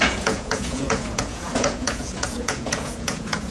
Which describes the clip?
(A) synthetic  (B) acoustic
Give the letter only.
A